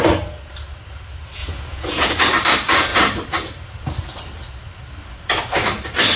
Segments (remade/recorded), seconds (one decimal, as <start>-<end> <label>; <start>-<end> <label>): 0.0-1.4 recorded; 1.4-2.2 remade; 2.2-6.2 recorded